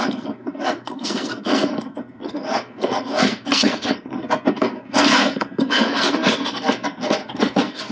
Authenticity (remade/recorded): remade